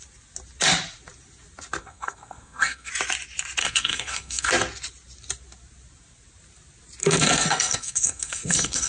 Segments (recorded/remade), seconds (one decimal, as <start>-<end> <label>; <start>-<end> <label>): 0.0-1.8 recorded; 1.8-2.9 remade; 2.9-3.6 recorded; 3.6-4.5 remade; 4.5-7.0 recorded; 7.0-8.9 remade